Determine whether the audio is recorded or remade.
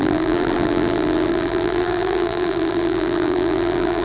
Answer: remade